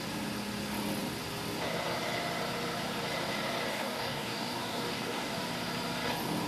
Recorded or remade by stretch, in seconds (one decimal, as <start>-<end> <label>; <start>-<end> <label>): 0.0-3.7 recorded; 3.7-5.4 remade; 5.4-6.5 recorded